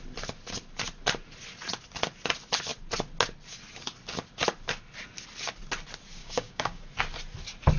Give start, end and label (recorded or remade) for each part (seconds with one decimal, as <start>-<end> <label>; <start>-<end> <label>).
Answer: 0.0-6.2 recorded; 6.2-6.8 remade; 6.8-7.8 recorded